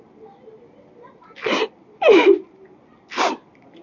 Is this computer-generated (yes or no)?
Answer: no